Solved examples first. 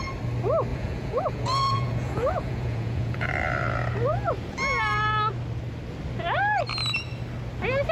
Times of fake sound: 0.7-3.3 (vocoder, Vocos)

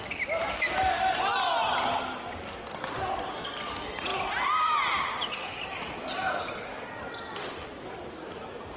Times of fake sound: none

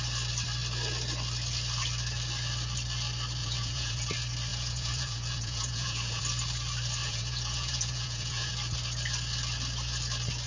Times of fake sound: 3.4-4.0 (vocoder, Vocos); 4.5-6.2; 7.0-8.5